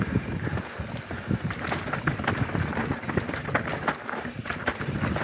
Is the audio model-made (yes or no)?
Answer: no